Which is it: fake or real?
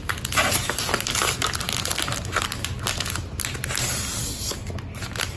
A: real